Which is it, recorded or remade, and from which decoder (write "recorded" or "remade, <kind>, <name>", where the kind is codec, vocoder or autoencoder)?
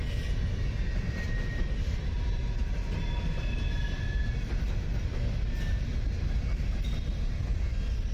recorded